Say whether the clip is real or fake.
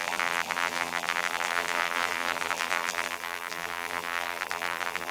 fake